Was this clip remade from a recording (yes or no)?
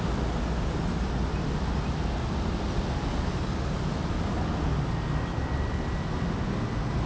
no